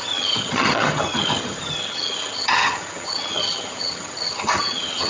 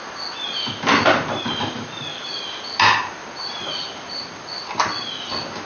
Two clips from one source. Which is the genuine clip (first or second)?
second